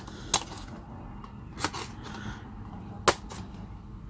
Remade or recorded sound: recorded